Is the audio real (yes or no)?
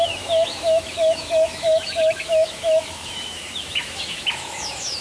no